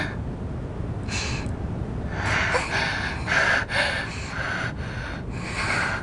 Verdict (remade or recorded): recorded